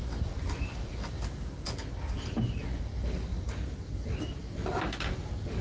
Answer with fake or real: real